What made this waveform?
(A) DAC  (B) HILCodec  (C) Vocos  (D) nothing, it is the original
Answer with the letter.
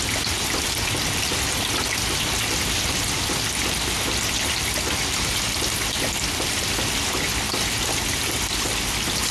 D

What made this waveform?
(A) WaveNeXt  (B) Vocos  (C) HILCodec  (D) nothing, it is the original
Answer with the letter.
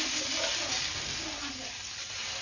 D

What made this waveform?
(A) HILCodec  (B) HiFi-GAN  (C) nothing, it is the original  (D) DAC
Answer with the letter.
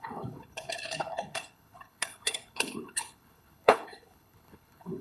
A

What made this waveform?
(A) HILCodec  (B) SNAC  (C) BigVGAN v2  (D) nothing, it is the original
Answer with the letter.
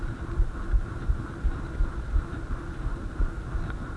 D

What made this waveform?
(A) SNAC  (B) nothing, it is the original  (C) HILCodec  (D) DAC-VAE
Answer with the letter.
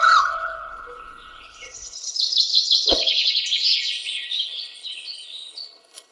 C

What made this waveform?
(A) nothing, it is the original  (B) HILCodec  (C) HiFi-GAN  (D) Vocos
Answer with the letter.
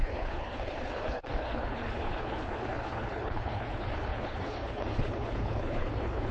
B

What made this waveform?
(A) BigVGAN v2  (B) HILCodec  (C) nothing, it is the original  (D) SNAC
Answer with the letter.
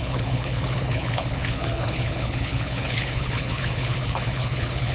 B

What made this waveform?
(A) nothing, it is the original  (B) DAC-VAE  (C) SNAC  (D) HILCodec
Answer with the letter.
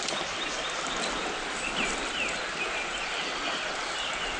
A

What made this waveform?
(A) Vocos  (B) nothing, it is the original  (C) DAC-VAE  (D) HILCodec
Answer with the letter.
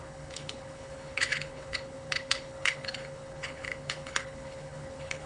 D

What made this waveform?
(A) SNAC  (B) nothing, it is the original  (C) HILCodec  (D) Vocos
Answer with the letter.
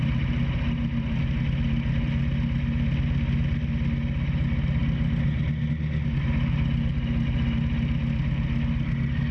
B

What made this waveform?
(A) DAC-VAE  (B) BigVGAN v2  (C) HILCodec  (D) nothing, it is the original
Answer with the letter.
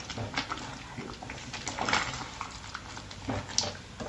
D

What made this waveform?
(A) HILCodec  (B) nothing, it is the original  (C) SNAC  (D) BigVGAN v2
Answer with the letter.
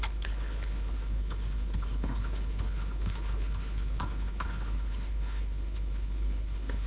A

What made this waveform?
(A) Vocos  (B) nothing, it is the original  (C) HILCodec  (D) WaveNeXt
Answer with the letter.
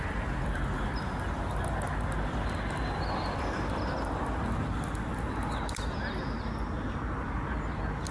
B